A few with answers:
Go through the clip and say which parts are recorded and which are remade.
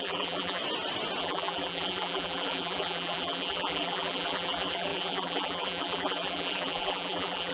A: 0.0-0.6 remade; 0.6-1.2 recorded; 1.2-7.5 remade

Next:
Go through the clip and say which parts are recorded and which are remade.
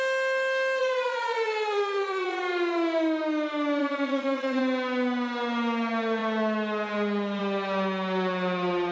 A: 0.0-0.8 recorded; 0.8-2.4 remade; 2.4-3.8 recorded; 3.8-4.6 remade; 4.6-8.9 recorded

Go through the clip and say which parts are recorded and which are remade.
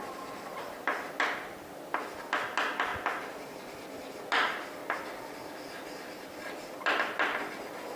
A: 0.0-8.0 recorded